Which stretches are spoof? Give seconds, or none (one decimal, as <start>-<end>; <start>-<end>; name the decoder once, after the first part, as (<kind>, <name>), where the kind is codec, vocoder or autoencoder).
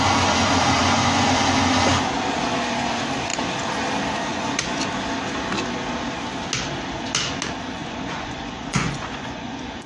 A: 0.8-1.3 (vocoder, Vocos); 4.3-4.8; 7.8-9.9